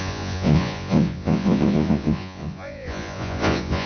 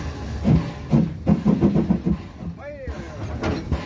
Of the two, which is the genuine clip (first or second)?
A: second